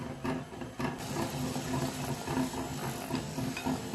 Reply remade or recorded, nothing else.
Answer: recorded